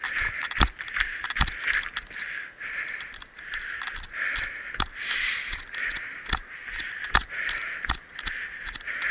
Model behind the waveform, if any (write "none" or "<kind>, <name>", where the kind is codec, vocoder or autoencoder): none